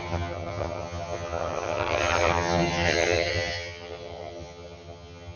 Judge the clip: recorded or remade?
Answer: remade